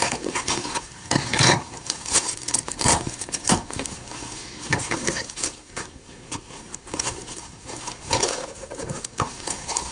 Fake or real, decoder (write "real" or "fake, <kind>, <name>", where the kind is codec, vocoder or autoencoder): fake, codec, SNAC